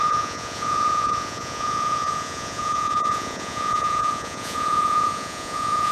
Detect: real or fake fake